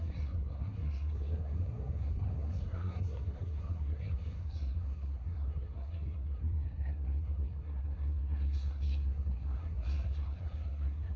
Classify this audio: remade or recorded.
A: remade